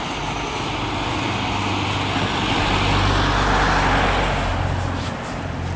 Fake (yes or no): no